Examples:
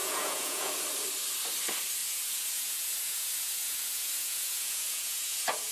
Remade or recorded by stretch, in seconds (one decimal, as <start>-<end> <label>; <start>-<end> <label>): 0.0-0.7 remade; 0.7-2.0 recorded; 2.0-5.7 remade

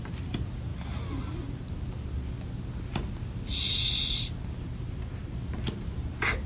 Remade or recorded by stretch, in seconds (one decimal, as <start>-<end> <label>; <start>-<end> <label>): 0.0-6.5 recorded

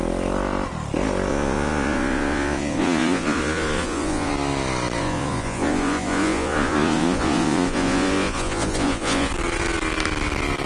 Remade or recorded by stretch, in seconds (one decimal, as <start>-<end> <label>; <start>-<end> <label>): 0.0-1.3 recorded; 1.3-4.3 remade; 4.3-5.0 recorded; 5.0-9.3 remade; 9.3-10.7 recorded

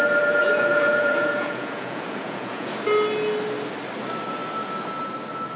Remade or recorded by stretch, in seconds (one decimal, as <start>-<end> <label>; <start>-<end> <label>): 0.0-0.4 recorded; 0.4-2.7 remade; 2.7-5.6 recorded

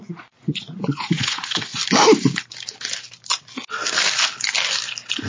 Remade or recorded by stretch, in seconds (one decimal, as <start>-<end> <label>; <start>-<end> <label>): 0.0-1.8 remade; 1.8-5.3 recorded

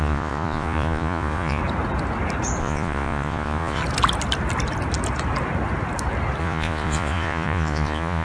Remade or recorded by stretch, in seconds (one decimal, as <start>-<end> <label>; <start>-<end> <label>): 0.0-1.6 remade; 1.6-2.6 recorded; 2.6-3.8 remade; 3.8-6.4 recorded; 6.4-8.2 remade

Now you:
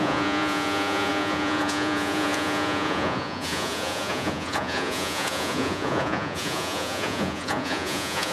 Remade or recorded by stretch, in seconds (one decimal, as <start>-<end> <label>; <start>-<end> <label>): 0.0-8.3 remade